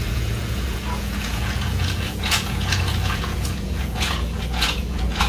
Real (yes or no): no